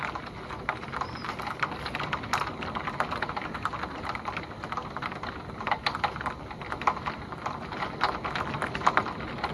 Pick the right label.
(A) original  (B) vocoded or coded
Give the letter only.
A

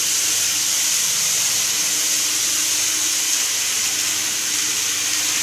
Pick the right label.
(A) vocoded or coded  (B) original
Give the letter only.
B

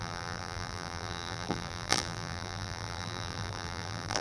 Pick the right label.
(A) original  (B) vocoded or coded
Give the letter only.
B